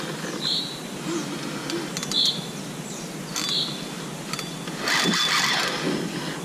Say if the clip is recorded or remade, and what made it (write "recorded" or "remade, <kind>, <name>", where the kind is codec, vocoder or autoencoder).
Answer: recorded